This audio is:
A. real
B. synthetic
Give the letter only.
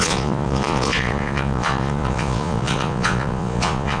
B